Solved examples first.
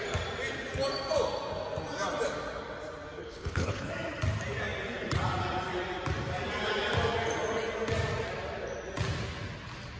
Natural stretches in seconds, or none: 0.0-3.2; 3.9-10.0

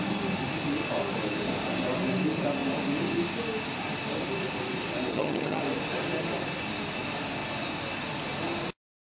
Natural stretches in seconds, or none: 0.0-5.1; 5.6-9.0

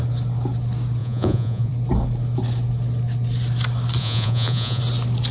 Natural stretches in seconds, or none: 0.0-1.0; 1.7-4.0; 4.8-5.3